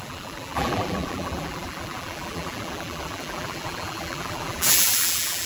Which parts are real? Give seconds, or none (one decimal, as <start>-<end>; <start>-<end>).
none